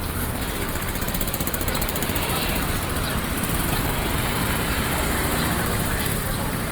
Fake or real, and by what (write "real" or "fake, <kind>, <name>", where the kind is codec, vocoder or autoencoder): fake, vocoder, BigVGAN v2